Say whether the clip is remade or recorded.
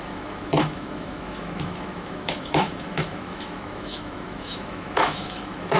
remade